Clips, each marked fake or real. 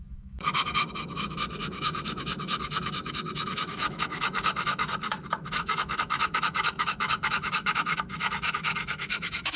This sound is fake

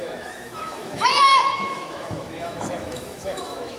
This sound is fake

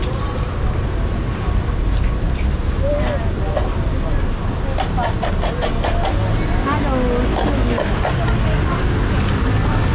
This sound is real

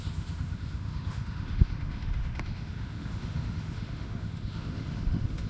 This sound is fake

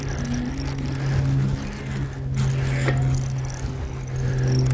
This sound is real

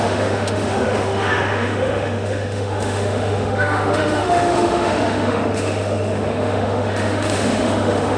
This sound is fake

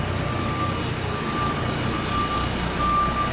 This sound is real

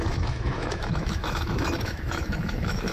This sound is fake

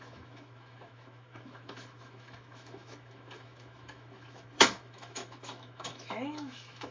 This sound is fake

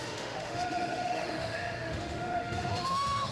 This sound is fake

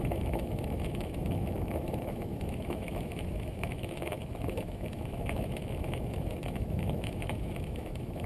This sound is fake